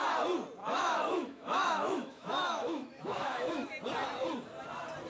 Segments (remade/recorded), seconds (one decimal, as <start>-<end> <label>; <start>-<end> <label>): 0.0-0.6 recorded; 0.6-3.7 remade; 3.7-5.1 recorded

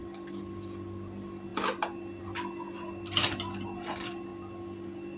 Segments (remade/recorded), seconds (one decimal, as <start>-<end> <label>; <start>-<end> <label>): 0.0-5.2 recorded

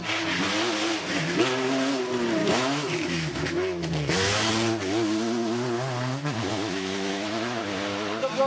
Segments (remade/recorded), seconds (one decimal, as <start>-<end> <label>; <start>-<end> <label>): 0.0-2.4 recorded; 2.4-4.5 remade; 4.5-6.5 recorded; 6.5-7.6 remade; 7.6-8.5 recorded

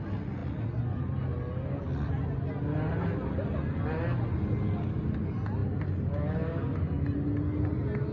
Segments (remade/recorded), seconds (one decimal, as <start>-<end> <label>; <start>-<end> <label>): 0.0-8.1 recorded

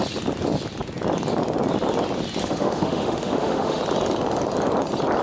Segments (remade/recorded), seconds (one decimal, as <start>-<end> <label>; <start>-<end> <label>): 0.0-2.4 recorded; 2.4-3.8 remade; 3.8-5.2 recorded

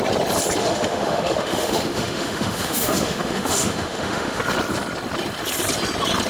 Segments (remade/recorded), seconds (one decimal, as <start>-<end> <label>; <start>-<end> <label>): 0.0-0.6 recorded; 0.6-4.4 remade; 4.4-6.3 recorded

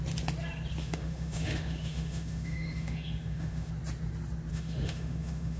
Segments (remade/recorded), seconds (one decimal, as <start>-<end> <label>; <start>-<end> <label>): 0.0-0.8 recorded; 0.8-3.7 remade; 3.7-4.5 recorded; 4.5-5.6 remade

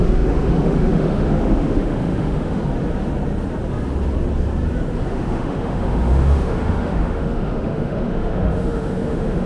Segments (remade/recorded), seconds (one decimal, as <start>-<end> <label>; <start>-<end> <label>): 0.0-2.6 remade; 2.6-5.1 recorded; 5.1-9.5 remade